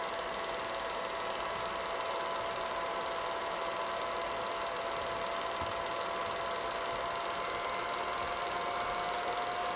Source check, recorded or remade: recorded